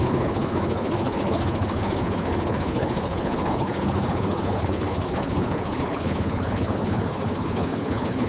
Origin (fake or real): fake